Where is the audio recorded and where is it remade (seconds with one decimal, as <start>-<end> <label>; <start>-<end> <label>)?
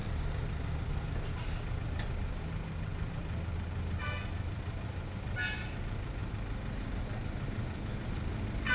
0.0-8.7 recorded